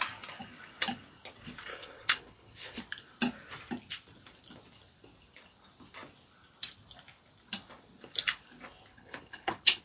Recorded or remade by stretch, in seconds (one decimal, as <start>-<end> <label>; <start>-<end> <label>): 0.0-1.7 recorded; 1.7-2.8 remade; 2.8-8.9 recorded; 8.9-9.8 remade